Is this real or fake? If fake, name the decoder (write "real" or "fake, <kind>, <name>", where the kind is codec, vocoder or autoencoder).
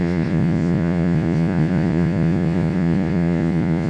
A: fake, vocoder, Vocos